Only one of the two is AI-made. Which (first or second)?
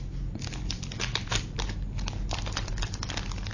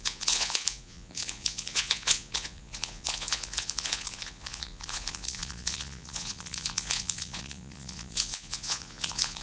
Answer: second